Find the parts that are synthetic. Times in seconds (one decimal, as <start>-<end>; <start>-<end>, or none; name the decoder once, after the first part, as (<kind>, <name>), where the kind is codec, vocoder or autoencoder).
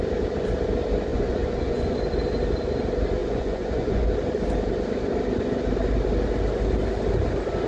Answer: 1.1-2.0 (vocoder, Vocos); 3.2-4.1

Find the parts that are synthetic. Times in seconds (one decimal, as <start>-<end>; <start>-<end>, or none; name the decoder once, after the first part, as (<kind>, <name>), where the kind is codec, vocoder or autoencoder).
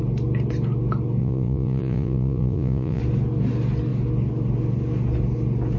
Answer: 1.2-3.0 (vocoder, Vocos)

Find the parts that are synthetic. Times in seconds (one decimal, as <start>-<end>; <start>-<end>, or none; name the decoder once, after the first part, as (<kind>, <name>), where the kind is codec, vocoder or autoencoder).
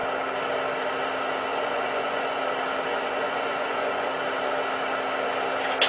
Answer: 1.5-2.4 (vocoder, Vocos); 2.9-4.1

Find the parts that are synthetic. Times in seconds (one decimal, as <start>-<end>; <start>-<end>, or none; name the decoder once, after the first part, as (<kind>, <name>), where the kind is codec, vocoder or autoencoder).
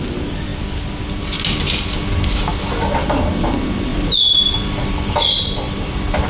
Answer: 3.9-4.9 (vocoder, BigVGAN v2)